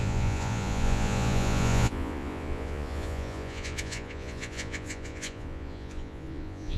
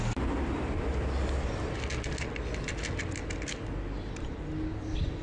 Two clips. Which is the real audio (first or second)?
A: second